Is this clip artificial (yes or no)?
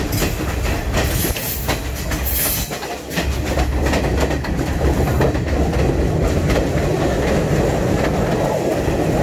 no